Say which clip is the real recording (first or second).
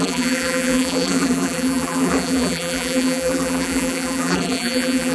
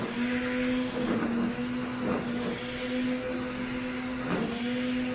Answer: second